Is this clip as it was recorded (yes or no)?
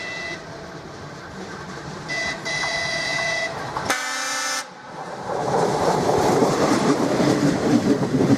no